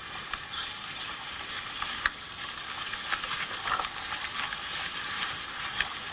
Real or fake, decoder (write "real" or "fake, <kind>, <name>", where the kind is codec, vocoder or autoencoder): real